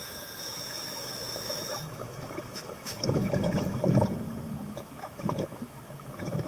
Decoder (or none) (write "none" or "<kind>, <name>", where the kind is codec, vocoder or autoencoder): autoencoder, DAC-VAE